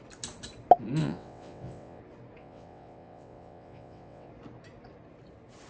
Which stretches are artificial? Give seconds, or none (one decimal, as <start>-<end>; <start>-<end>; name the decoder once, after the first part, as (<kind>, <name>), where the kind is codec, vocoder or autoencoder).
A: 1.0-2.0 (vocoder, WaveNeXt); 2.4-4.3